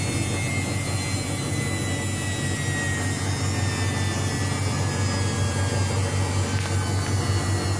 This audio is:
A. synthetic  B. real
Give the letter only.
B